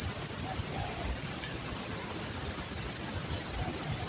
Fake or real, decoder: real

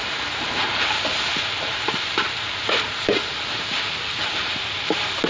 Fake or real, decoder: fake, vocoder, BigVGAN v2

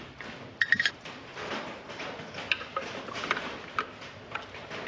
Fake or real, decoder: real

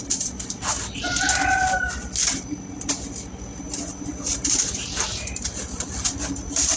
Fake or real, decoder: fake, vocoder, BigVGAN v2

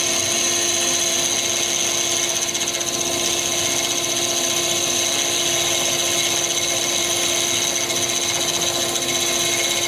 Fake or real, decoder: real